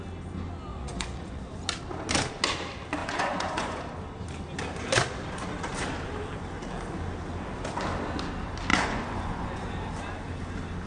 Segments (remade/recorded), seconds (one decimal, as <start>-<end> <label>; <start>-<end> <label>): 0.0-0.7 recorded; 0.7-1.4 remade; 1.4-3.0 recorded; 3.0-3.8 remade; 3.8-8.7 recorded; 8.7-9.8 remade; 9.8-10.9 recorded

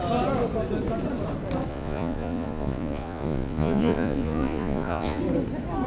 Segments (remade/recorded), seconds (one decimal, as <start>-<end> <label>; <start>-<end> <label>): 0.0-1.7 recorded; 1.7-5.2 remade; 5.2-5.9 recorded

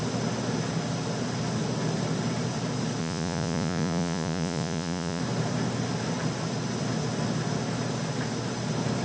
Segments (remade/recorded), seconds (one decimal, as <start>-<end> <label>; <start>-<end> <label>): 0.0-3.0 recorded; 3.0-5.2 remade; 5.2-9.0 recorded

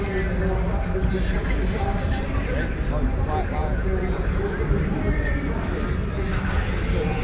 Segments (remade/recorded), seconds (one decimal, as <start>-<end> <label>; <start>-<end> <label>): 0.0-3.6 recorded; 3.6-4.4 remade; 4.4-7.2 recorded

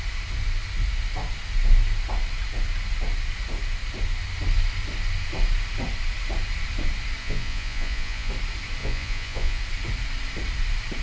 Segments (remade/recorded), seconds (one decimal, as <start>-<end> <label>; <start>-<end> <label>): 0.0-7.2 recorded; 7.2-8.3 remade; 8.3-8.8 recorded; 8.8-9.6 remade; 9.6-11.0 recorded

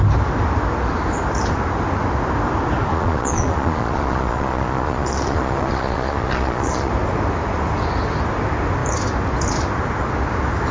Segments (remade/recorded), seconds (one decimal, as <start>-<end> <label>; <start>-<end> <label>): 0.0-2.9 recorded; 2.9-6.9 remade; 6.9-10.7 recorded